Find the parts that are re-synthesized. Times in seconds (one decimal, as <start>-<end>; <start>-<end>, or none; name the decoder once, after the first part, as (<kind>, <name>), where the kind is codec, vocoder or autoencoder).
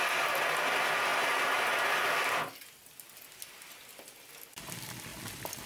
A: none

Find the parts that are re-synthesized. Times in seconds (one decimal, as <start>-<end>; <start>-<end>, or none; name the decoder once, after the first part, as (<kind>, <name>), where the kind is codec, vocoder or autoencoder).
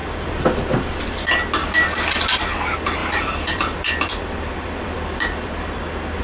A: 0.0-0.7 (vocoder, BigVGAN v2); 3.0-5.5